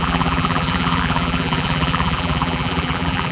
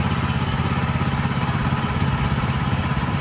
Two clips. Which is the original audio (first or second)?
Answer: second